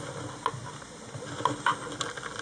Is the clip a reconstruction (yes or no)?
no